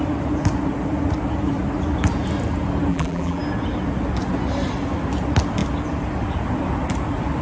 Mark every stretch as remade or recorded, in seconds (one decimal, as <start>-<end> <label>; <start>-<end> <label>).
0.0-2.9 recorded; 2.9-3.4 remade; 3.4-7.4 recorded